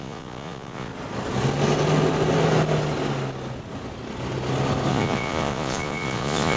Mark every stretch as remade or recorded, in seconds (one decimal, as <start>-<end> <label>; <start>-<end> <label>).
0.0-0.9 remade; 0.9-4.9 recorded; 4.9-6.6 remade